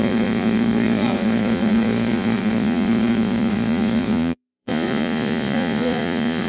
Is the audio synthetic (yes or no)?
yes